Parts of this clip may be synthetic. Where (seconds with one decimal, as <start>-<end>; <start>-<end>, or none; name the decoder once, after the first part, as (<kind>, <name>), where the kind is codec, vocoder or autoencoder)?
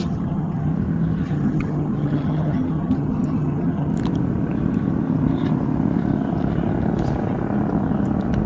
0.0-0.7 (vocoder, HiFi-GAN); 1.2-3.9